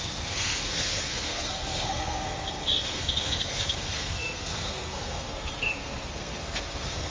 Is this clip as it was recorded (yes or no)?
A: no